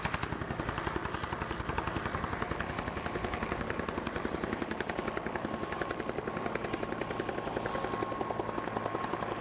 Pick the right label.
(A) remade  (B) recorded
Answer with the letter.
B